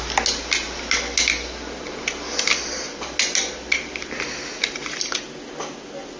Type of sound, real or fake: real